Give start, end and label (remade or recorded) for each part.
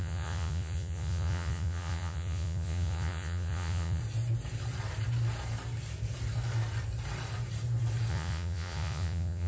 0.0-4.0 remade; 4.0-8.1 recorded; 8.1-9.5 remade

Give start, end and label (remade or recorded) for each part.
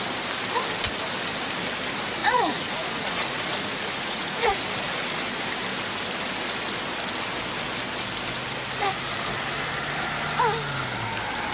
0.0-2.2 recorded; 2.2-4.6 remade; 4.6-11.5 recorded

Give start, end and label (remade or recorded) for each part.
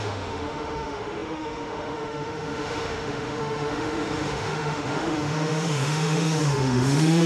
0.0-7.3 remade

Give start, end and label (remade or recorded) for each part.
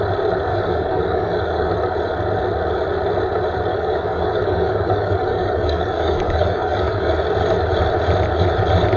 0.0-0.5 recorded; 0.5-1.7 remade; 1.7-3.7 recorded; 3.7-7.1 remade; 7.1-9.0 recorded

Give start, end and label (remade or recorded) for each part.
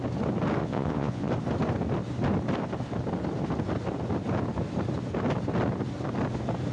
0.0-0.6 recorded; 0.6-1.3 remade; 1.3-6.7 recorded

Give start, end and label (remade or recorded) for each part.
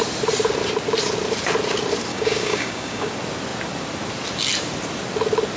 0.0-2.1 recorded; 2.1-3.1 remade; 3.1-5.6 recorded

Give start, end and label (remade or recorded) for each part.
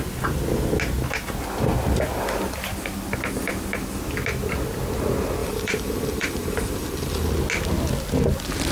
0.0-5.4 recorded; 5.4-7.3 remade; 7.3-8.7 recorded